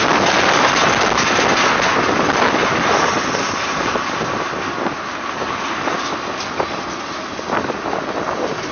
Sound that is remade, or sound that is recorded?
recorded